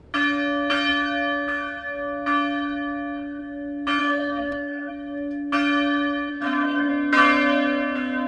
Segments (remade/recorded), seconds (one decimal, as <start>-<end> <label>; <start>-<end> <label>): 0.0-4.0 recorded; 4.0-4.9 remade; 4.9-6.3 recorded; 6.3-6.9 remade; 6.9-8.3 recorded